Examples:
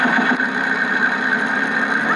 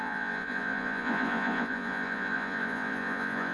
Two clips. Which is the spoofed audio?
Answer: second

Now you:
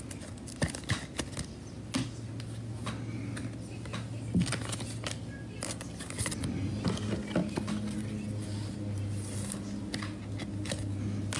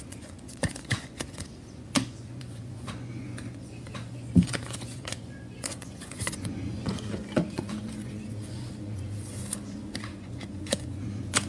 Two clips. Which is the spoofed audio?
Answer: second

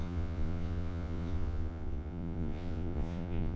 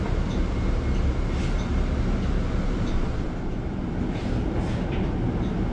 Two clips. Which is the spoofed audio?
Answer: first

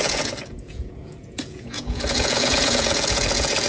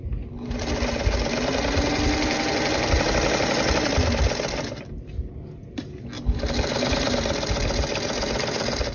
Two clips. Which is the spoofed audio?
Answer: first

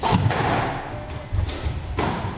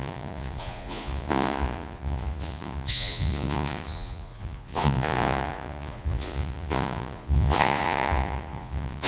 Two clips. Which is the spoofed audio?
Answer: second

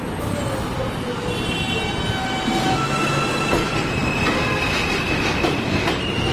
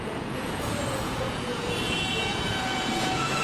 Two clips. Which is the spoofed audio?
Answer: second